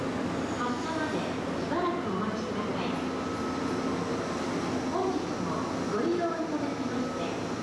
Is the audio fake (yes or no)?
no